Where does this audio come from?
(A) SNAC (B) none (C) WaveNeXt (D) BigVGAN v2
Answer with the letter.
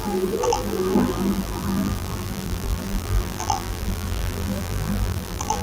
D